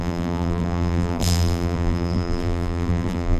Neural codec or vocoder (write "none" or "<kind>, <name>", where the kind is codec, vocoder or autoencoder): vocoder, BigVGAN v2